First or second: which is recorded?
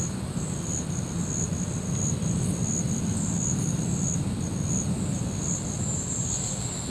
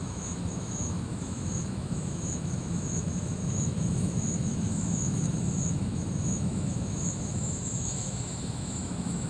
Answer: first